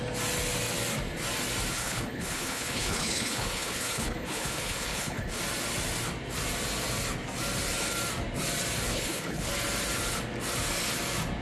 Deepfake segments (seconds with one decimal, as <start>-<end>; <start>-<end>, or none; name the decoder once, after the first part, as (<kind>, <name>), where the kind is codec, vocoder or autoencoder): 1.7-5.4 (codec, HILCodec); 8.9-9.5